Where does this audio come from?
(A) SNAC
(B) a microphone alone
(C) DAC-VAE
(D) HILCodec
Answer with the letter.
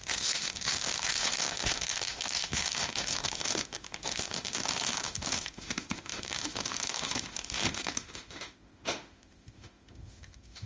C